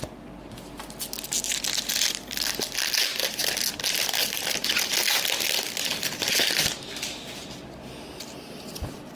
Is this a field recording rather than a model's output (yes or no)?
yes